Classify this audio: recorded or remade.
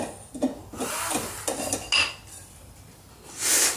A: recorded